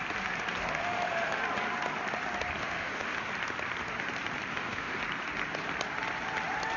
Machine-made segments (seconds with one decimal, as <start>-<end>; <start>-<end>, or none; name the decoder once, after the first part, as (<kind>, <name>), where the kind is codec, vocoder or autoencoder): 0.8-1.4 (autoencoder, DAC-VAE); 2.6-3.3; 4.5-5.0